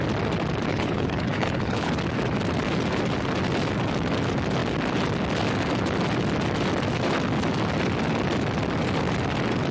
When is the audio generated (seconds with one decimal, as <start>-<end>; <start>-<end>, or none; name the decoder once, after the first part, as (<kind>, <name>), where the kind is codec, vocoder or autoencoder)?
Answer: 0.7-1.9 (codec, HILCodec)